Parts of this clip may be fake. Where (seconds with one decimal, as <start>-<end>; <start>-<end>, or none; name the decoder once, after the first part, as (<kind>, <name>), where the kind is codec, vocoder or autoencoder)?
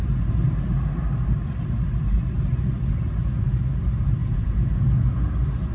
4.2-5.1 (vocoder, Vocos)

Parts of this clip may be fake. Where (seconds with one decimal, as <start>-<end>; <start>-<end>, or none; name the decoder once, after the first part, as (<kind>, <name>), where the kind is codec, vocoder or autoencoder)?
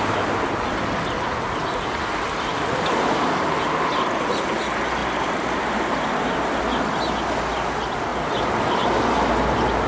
none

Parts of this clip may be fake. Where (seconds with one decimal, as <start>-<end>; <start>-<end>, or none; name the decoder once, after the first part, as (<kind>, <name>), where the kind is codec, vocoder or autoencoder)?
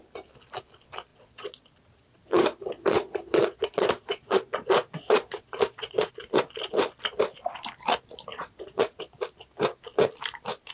1.1-6.1 (vocoder, Vocos); 8.3-9.0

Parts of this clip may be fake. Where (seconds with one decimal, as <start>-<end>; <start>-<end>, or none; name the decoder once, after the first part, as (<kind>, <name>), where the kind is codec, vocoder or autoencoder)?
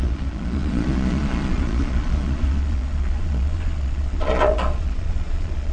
0.0-5.7 (vocoder, Vocos)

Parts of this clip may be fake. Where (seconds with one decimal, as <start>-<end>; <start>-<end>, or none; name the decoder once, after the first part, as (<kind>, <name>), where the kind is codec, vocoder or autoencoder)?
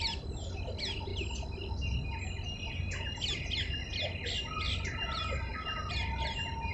none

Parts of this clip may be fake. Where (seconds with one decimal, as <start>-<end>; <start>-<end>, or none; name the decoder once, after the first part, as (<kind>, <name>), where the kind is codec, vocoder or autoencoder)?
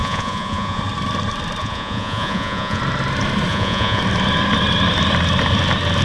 0.0-0.8 (vocoder, Vocos); 1.6-2.8; 3.5-4.0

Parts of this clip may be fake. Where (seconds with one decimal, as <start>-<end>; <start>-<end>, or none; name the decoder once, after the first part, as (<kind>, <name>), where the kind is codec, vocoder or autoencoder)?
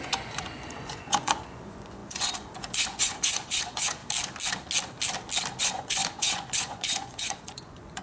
0.0-4.0 (vocoder, Vocos); 5.6-8.0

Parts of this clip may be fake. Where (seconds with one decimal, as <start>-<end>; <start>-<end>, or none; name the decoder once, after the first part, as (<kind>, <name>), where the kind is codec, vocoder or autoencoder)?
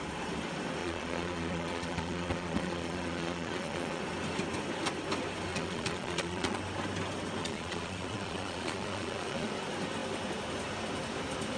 0.8-4.0 (vocoder, Vocos); 5.5-6.6; 7.4-9.5